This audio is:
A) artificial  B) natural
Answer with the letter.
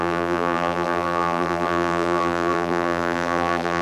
A